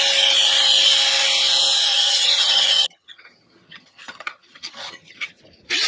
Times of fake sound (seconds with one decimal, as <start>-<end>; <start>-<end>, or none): 1.9-5.4